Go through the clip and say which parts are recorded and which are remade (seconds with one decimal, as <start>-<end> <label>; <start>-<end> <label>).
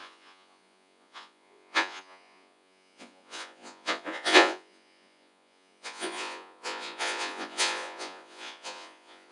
0.0-9.3 remade